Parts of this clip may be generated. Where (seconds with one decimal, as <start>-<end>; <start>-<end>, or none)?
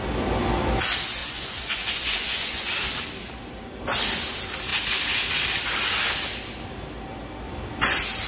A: 1.2-2.7